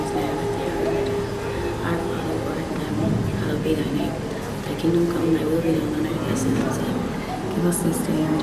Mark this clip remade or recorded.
recorded